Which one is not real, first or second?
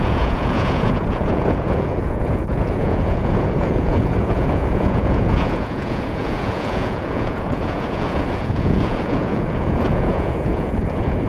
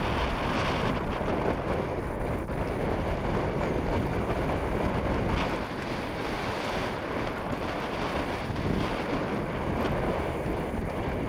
first